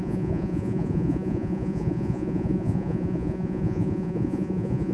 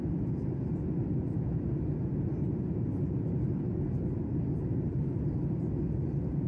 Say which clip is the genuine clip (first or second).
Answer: second